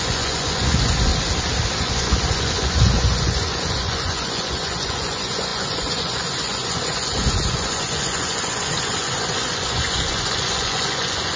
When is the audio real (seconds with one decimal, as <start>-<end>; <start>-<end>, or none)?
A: 1.1-1.8